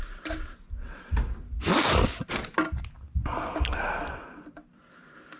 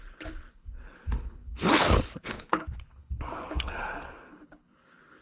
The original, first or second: first